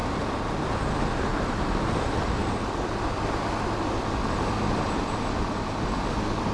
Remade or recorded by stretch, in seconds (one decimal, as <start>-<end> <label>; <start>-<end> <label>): 0.0-6.5 recorded